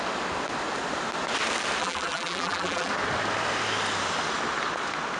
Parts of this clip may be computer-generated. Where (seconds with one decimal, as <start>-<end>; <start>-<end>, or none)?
1.8-2.9